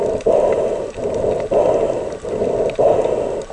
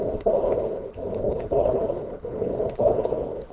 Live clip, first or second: first